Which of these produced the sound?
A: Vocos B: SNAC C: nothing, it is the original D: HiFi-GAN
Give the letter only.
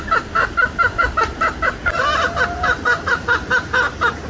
C